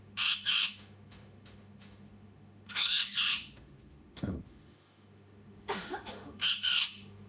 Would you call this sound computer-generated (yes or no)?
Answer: yes